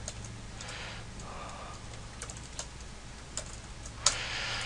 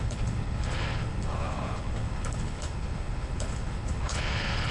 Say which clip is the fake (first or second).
second